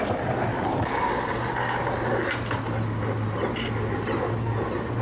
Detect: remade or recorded recorded